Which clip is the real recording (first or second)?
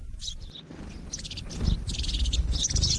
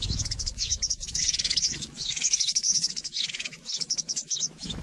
first